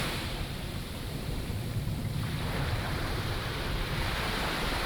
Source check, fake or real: fake